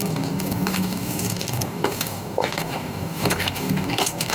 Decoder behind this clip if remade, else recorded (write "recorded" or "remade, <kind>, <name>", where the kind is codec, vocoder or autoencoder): remade, codec, DAC